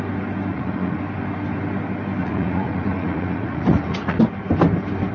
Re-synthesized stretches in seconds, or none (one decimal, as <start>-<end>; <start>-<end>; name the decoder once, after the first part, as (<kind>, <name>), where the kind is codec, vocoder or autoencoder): 0.5-1.0 (vocoder, Vocos); 2.2-4.2